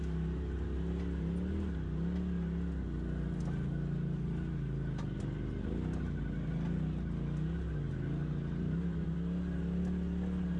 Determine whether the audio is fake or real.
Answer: real